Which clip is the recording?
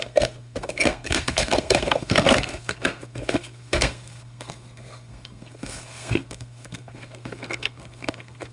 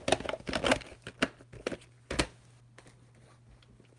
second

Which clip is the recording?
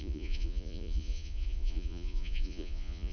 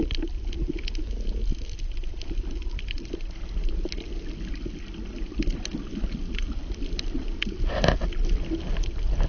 second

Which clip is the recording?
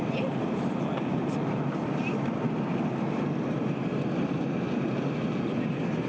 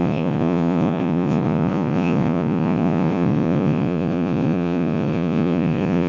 first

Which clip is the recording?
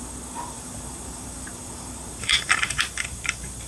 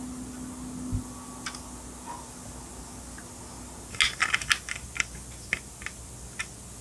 second